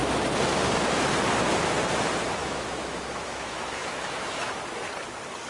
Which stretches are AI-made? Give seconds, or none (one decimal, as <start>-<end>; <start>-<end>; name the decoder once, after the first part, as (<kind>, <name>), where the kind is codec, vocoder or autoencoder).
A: 2.4-4.5 (autoencoder, DAC-VAE)